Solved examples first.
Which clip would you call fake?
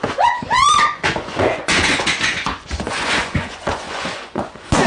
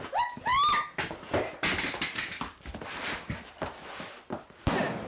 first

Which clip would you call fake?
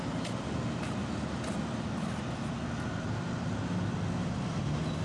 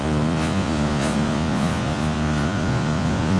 second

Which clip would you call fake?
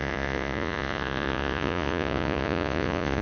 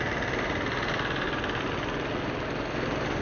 first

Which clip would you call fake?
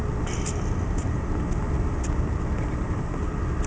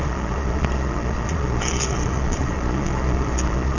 second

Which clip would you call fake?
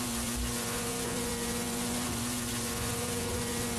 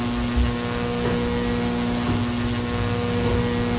first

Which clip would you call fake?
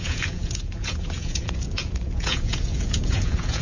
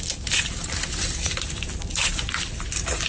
first